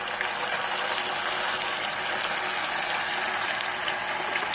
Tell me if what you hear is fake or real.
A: real